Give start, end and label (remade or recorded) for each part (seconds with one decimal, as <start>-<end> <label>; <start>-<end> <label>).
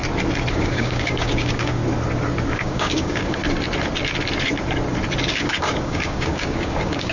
0.0-0.5 recorded; 0.5-1.8 remade; 1.8-2.5 recorded; 2.5-3.4 remade; 3.4-5.3 recorded; 5.3-7.1 remade